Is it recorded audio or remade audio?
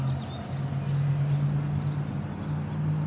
recorded